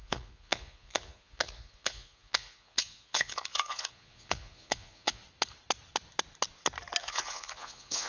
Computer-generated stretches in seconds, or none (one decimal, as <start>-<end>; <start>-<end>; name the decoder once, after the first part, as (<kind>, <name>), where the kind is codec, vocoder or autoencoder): 0.0-5.2 (vocoder, Vocos); 7.0-8.1